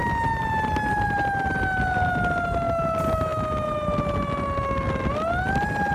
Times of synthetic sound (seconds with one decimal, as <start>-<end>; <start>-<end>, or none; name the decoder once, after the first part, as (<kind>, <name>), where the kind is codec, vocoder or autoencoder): none